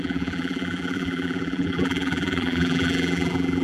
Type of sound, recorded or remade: remade